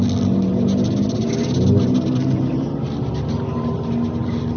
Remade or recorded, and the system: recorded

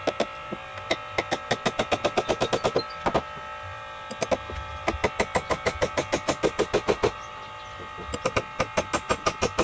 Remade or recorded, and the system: recorded